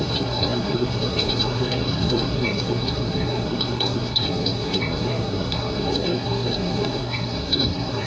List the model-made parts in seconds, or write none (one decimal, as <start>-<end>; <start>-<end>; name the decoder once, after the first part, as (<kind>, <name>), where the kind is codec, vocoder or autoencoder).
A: 0.0-8.1 (codec, SNAC)